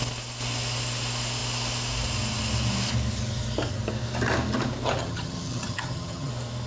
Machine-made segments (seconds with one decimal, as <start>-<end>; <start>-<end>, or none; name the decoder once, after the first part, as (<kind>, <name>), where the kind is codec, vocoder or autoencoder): 5.0-6.3 (vocoder, HiFi-GAN)